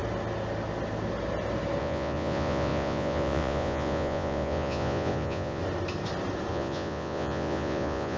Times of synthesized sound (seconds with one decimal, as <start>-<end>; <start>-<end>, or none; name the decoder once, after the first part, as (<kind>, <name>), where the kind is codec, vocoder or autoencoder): 1.8-5.6 (vocoder, Vocos); 6.5-8.2